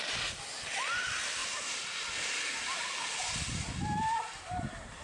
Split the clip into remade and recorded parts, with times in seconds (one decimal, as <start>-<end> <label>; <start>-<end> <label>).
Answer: 0.0-5.0 recorded